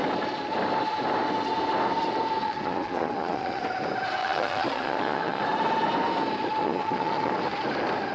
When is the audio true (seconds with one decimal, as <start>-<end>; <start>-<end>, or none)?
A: 0.0-2.4; 3.6-4.2; 5.4-6.6; 7.3-8.1